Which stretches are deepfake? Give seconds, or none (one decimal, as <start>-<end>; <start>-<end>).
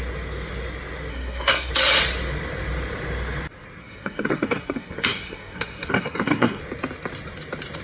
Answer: 1.1-1.7; 3.8-6.6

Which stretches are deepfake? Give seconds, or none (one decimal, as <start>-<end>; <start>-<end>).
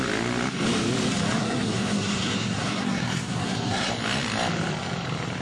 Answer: 1.4-3.9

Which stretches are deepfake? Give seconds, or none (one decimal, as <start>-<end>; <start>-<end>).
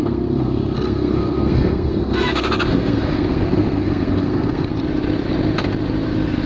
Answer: 0.0-4.7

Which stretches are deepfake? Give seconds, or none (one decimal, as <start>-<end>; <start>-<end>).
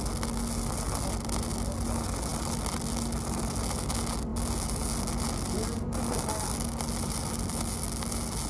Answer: none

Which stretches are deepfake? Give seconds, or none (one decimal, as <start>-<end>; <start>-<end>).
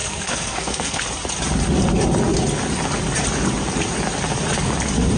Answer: 0.0-1.0